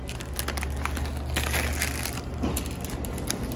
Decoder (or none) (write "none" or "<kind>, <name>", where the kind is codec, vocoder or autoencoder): none